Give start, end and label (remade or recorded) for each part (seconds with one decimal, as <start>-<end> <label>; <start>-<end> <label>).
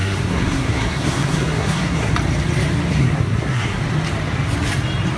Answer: 0.0-2.1 remade; 2.1-2.9 recorded; 2.9-3.8 remade; 3.8-5.2 recorded